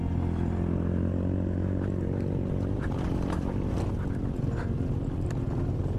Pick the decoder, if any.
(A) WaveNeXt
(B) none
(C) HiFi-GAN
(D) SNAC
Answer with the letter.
B